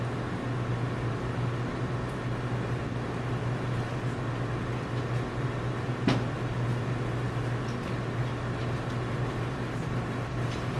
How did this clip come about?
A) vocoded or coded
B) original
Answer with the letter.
B